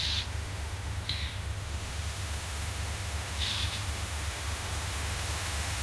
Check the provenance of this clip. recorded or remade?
remade